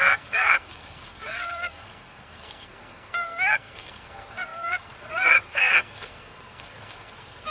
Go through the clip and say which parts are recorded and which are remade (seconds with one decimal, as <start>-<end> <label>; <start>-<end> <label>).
0.0-7.5 remade